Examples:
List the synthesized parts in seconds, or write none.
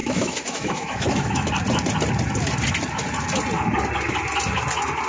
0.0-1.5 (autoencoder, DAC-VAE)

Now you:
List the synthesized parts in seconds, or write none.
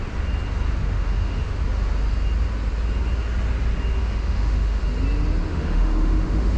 0.8-1.6 (autoencoder, DAC-VAE); 4.0-4.8; 5.5-6.6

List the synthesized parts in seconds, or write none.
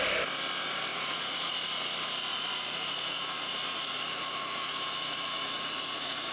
0.9-1.5 (vocoder, Vocos); 2.3-6.3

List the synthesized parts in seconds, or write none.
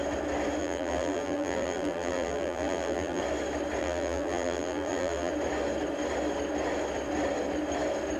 0.6-3.2 (vocoder, BigVGAN v2); 3.8-5.3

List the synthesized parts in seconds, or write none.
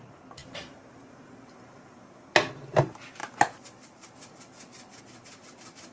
none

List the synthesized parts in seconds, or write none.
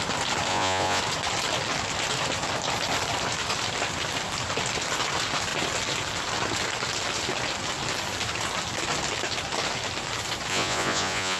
0.5-1.0 (vocoder, Vocos); 10.5-11.4